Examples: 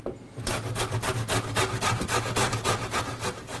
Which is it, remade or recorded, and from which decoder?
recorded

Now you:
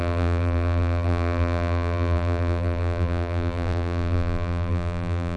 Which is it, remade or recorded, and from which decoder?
remade, vocoder, BigVGAN v2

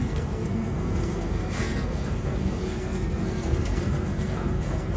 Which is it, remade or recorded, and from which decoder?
remade, codec, SNAC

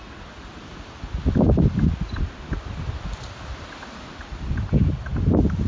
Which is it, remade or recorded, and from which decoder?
remade, vocoder, BigVGAN v2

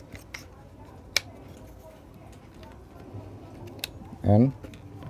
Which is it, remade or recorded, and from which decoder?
recorded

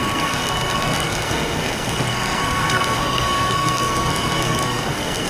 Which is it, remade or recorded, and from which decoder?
remade, codec, SNAC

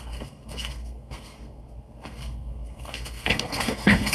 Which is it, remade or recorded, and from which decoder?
remade, codec, SNAC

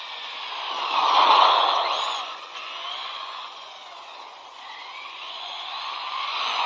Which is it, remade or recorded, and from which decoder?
remade, vocoder, Vocos